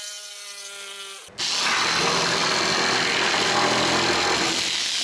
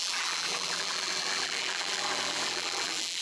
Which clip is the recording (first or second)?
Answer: first